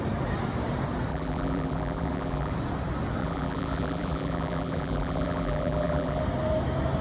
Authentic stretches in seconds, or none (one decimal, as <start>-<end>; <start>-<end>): 0.0-1.1; 2.5-3.2; 6.2-7.0